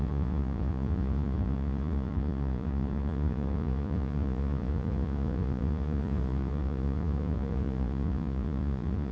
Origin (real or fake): fake